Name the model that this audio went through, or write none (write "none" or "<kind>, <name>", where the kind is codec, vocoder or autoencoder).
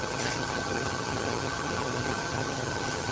vocoder, HiFi-GAN